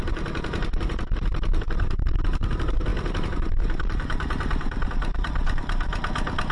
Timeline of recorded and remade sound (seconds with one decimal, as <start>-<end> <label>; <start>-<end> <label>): 0.0-5.9 remade; 5.9-6.5 recorded